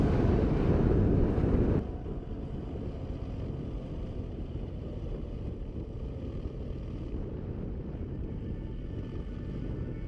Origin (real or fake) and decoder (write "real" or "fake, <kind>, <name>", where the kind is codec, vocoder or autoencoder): real